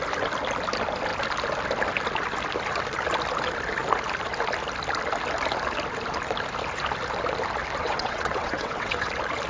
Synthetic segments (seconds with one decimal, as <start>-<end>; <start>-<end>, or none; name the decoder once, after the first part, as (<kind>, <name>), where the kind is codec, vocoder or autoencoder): 7.8-9.1 (vocoder, WaveNeXt)